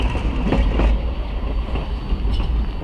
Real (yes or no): yes